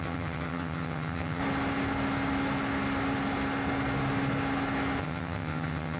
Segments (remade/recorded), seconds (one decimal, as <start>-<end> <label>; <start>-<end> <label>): 0.0-1.4 remade; 1.4-5.0 recorded; 5.0-6.0 remade